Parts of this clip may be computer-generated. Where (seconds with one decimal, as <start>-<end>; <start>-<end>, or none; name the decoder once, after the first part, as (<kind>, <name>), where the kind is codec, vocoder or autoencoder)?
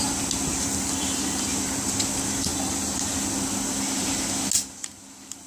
0.5-1.4 (vocoder, BigVGAN v2)